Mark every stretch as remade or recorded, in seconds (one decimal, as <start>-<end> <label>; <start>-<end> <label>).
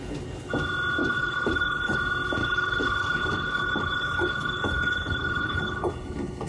0.0-1.0 recorded; 1.0-2.0 remade; 2.0-2.4 recorded; 2.4-6.5 remade